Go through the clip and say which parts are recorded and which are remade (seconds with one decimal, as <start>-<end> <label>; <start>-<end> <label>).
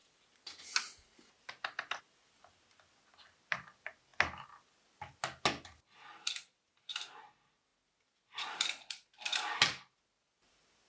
0.0-10.9 recorded